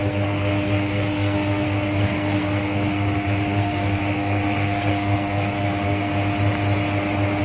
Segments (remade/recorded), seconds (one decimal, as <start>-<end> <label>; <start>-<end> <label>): 0.0-6.1 remade; 6.1-7.4 recorded